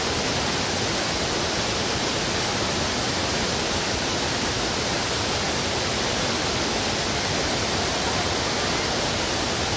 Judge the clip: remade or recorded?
recorded